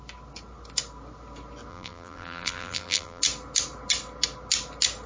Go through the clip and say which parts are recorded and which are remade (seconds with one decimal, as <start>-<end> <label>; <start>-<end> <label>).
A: 0.0-1.7 recorded; 1.7-3.2 remade; 3.2-5.1 recorded